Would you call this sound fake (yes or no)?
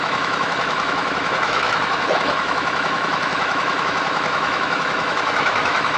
yes